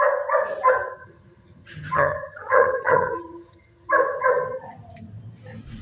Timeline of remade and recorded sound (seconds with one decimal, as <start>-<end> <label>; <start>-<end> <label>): 0.0-1.0 recorded; 1.0-3.9 remade; 3.9-5.8 recorded